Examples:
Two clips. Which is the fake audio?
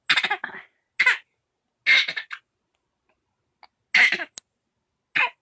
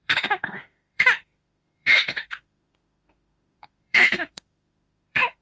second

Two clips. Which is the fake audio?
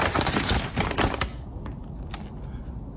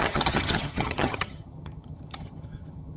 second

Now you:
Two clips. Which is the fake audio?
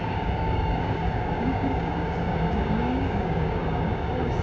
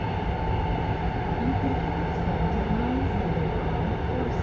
first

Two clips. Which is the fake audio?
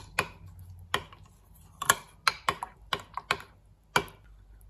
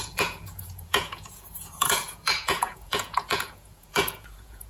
second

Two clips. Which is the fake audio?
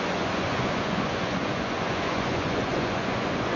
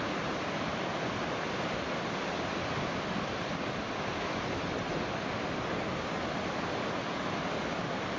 first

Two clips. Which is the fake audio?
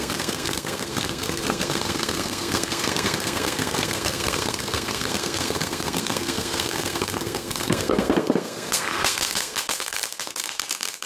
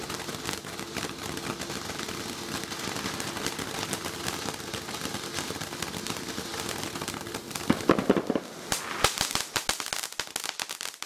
first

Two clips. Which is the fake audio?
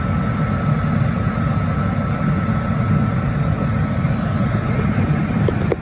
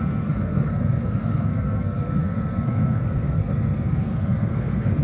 second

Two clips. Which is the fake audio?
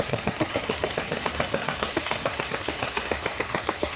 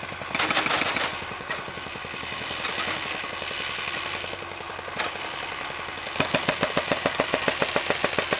first